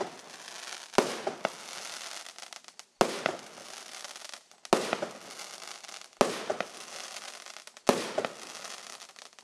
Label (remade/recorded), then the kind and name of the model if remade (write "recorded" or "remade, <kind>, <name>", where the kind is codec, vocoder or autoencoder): recorded